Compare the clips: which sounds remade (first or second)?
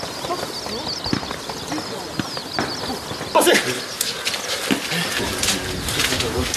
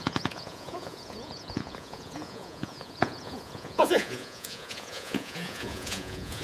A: second